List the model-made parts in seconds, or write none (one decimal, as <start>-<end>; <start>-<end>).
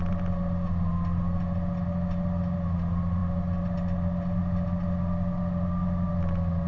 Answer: none